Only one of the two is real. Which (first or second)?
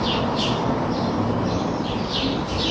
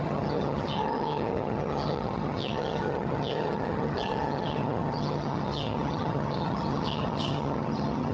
first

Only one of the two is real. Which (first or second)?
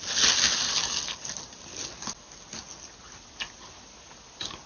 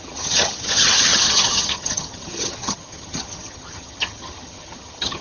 first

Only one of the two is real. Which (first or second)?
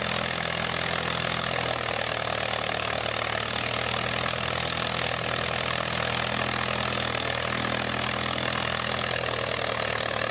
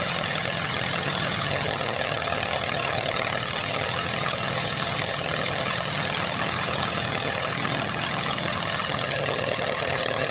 first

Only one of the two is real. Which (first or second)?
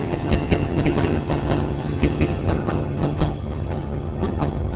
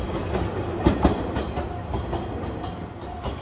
second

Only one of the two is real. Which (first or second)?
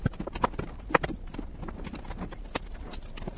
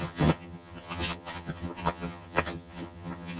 first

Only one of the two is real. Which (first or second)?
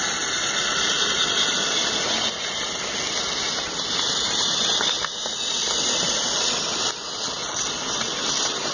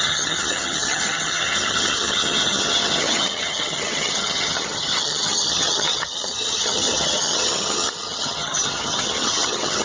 first